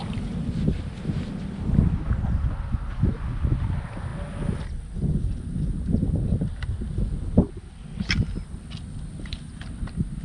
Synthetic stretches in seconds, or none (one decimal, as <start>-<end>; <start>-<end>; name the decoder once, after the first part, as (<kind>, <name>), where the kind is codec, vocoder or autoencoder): none